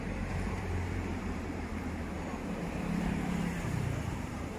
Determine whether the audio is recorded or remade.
remade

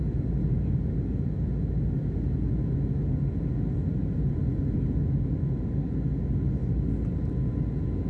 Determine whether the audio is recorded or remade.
recorded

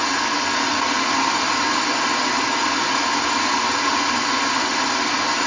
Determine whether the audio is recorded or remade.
recorded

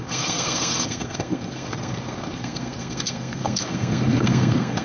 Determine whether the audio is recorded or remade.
remade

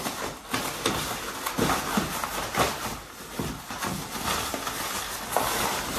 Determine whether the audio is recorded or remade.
recorded